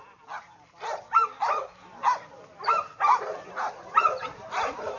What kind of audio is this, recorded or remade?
recorded